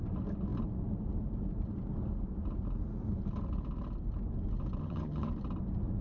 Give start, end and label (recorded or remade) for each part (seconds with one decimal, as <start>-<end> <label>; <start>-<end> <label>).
0.0-4.8 recorded; 4.8-5.3 remade; 5.3-6.0 recorded